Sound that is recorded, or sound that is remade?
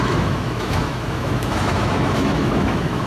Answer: remade